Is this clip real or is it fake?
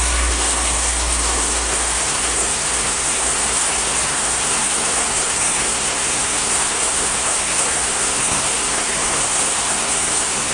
fake